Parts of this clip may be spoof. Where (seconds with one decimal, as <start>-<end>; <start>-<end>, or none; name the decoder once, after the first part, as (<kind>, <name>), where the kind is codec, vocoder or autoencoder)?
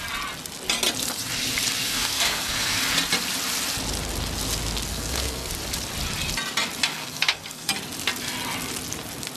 1.8-2.8 (codec, SNAC); 4.9-5.5; 6.9-7.7